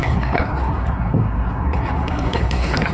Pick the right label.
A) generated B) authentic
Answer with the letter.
A